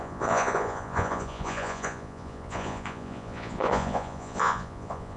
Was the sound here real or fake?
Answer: fake